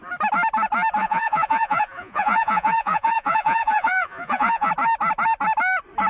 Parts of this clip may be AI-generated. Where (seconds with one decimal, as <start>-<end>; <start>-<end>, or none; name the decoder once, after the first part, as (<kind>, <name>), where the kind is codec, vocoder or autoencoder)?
1.0-4.7 (vocoder, Vocos)